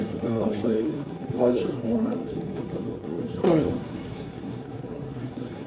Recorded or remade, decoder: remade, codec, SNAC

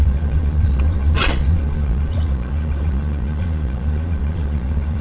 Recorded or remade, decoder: remade, vocoder, Vocos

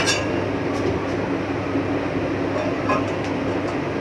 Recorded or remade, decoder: recorded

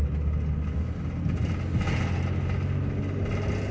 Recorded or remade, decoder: recorded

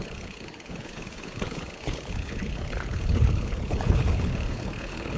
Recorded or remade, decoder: remade, codec, HILCodec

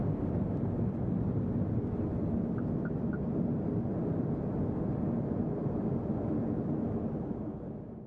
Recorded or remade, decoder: recorded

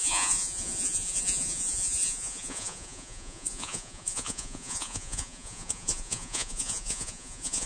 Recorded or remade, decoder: remade, vocoder, Vocos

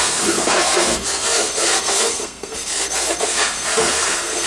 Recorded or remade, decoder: remade, codec, SNAC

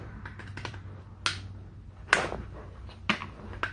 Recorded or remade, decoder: recorded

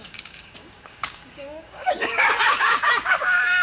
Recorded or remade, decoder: remade, codec, DAC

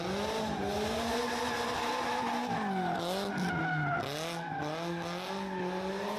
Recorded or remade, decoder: recorded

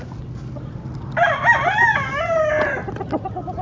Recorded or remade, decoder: recorded